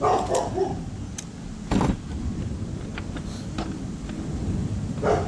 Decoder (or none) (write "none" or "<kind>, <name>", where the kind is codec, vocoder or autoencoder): none